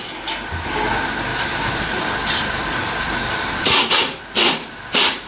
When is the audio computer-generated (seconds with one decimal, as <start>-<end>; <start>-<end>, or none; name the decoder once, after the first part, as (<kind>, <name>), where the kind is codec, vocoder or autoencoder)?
1.3-4.2 (vocoder, BigVGAN v2)